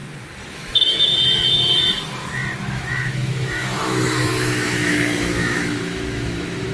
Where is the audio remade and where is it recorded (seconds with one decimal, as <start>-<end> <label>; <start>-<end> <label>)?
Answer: 0.0-0.5 recorded; 0.5-1.1 remade; 1.1-2.6 recorded; 2.6-6.7 remade